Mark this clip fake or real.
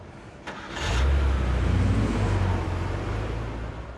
real